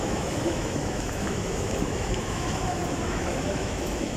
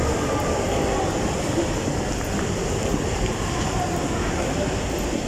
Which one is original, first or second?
second